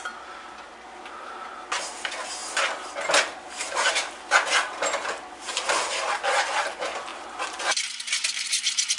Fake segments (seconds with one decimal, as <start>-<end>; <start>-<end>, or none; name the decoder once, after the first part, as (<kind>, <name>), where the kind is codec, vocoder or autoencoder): none